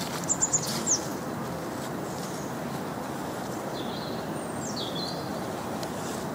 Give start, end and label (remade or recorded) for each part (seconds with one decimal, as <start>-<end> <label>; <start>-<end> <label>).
0.0-6.3 recorded